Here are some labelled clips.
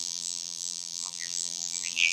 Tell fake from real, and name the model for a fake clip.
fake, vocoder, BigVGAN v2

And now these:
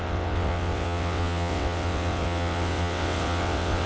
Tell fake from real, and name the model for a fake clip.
fake, vocoder, WaveNeXt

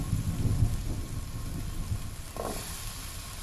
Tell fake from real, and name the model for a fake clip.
real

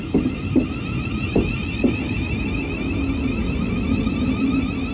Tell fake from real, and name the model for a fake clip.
real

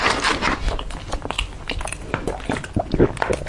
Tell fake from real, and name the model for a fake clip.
real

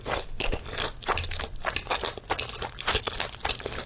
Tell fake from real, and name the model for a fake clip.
real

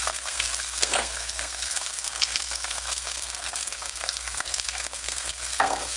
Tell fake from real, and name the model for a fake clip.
fake, codec, SNAC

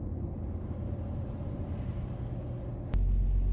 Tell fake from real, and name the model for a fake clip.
real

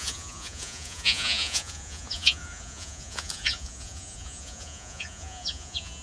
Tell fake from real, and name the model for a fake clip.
fake, vocoder, Vocos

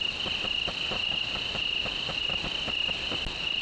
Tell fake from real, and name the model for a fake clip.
real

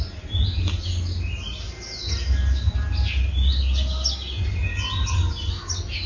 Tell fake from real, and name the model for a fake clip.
real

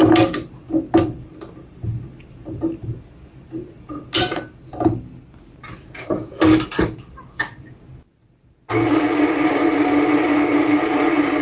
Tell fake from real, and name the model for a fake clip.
real